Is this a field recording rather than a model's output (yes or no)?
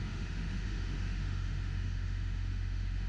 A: no